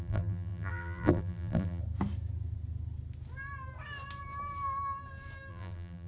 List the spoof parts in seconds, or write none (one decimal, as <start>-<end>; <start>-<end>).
0.0-1.8; 5.5-6.1